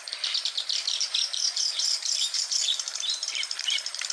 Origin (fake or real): fake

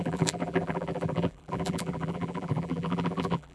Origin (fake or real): fake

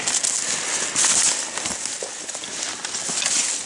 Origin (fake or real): real